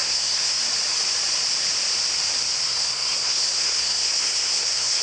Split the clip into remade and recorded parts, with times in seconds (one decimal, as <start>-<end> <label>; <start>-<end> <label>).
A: 0.0-0.6 remade; 0.6-2.6 recorded; 2.6-5.0 remade